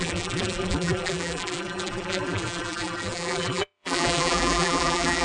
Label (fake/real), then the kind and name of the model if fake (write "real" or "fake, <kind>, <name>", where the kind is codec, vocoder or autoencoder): fake, vocoder, BigVGAN v2